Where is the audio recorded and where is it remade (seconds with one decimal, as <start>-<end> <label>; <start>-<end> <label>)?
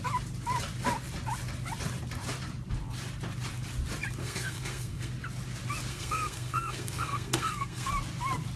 0.0-4.2 recorded; 4.2-5.1 remade; 5.1-5.9 recorded; 5.9-7.9 remade; 7.9-8.6 recorded